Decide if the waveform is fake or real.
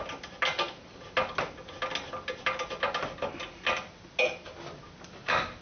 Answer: real